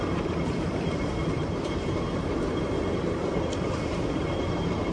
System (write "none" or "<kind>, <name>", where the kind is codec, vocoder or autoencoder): vocoder, BigVGAN v2